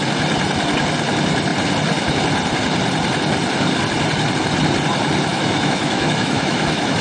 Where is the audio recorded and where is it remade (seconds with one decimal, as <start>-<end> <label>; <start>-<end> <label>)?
0.0-5.3 recorded; 5.3-7.0 remade